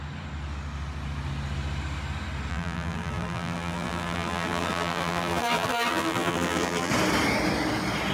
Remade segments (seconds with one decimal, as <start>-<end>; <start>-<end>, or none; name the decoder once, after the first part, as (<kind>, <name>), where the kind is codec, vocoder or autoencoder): 2.5-6.9 (vocoder, BigVGAN v2)